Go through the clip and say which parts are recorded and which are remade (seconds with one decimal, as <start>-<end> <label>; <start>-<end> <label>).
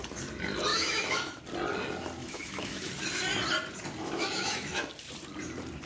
0.0-0.7 recorded; 0.7-1.4 remade; 1.4-2.2 recorded; 2.2-2.9 remade; 2.9-4.0 recorded; 4.0-4.9 remade; 4.9-5.9 recorded